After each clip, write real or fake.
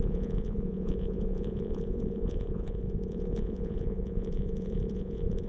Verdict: fake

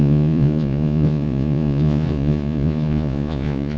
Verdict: fake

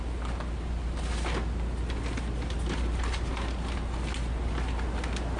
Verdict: real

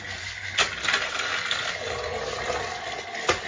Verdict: real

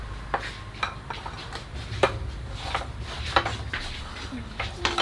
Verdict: real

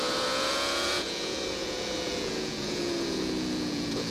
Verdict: fake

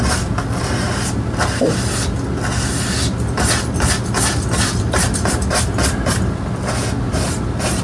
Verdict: real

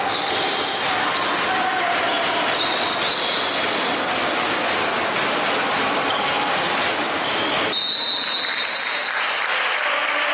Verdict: real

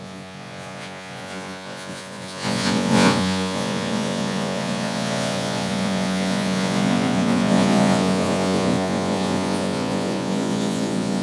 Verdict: fake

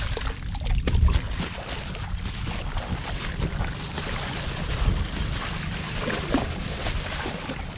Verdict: real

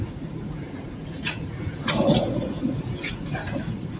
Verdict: fake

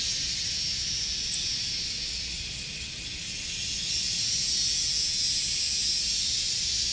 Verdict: real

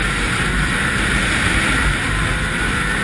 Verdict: real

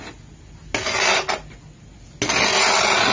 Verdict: real